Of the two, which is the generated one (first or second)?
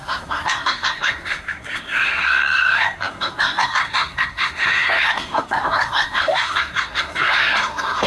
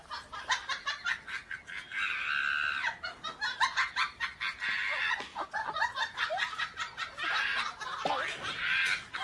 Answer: first